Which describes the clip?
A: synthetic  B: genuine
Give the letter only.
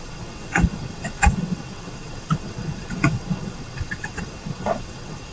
A